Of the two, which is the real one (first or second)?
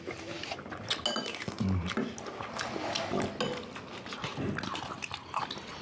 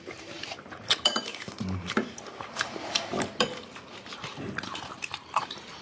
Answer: first